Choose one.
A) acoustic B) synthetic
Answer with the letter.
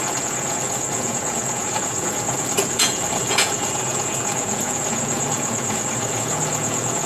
B